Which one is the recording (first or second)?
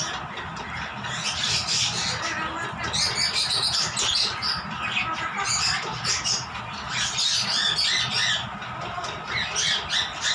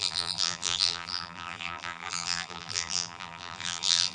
first